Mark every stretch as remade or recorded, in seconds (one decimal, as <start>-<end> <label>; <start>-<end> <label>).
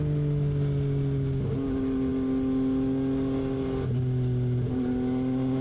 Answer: 0.0-5.6 recorded